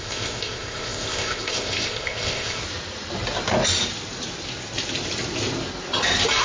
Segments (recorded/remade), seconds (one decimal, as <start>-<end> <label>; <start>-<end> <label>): 0.0-2.6 remade; 2.6-6.4 recorded